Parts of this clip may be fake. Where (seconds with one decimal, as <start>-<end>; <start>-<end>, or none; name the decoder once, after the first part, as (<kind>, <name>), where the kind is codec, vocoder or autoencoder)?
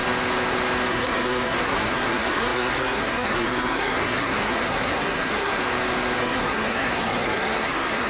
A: 0.9-5.6 (codec, SNAC); 6.2-8.1